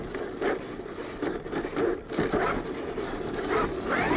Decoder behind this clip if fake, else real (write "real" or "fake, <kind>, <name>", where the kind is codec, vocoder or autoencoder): real